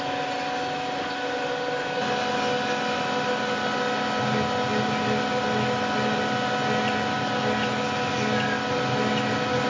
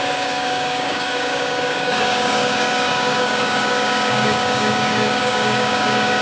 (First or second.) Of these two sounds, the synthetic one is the second